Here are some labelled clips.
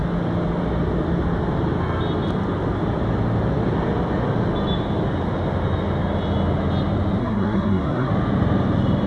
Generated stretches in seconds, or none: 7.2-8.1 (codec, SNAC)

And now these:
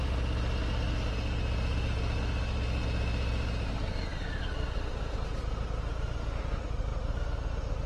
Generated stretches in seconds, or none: none